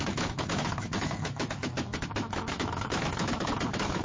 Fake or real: fake